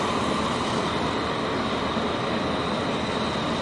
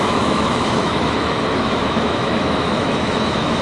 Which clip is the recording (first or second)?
first